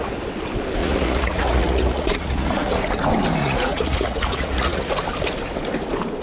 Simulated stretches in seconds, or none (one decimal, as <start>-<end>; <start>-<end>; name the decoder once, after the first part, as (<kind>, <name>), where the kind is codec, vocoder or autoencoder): 0.8-2.8 (vocoder, Vocos); 3.4-4.9